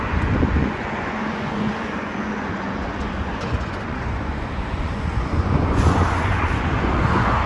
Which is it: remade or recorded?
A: remade